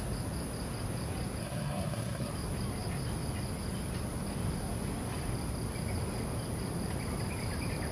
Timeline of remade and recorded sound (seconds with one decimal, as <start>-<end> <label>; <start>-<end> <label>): 0.0-1.4 recorded; 1.4-2.3 remade; 2.3-7.9 recorded